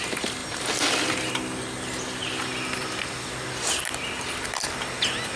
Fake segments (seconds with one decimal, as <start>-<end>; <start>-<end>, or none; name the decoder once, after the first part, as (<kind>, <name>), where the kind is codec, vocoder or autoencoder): none

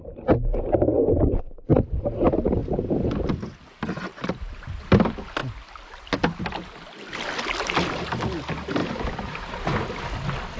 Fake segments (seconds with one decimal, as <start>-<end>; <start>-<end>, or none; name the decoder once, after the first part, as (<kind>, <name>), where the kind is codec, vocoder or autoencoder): 2.6-3.1 (vocoder, BigVGAN v2); 4.1-5.0; 8.8-9.5

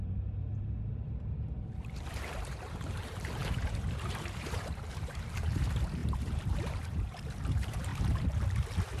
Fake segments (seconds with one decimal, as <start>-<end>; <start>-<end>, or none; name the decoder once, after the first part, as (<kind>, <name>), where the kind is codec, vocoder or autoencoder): 0.0-7.9 (vocoder, BigVGAN v2)

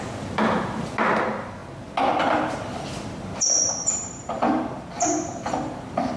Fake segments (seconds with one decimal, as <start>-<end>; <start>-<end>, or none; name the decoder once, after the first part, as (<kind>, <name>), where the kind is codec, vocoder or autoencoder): 0.0-1.6 (vocoder, BigVGAN v2); 2.2-6.2

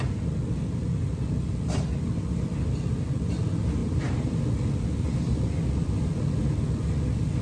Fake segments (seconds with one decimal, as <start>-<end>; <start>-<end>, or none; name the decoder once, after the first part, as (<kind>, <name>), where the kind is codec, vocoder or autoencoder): 3.8-4.4 (vocoder, BigVGAN v2)

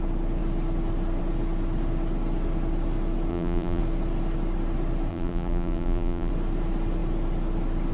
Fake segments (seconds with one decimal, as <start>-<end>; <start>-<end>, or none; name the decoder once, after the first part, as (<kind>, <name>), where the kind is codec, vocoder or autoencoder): 3.3-3.8 (vocoder, BigVGAN v2); 5.1-6.3

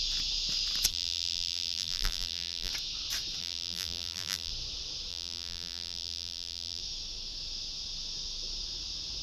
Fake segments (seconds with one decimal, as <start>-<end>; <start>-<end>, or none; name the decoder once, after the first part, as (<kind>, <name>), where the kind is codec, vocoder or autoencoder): 0.9-2.7 (vocoder, BigVGAN v2); 3.4-4.5; 5.1-6.8